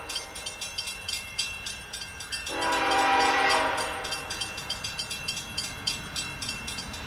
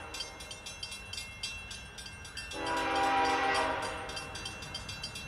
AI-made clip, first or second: first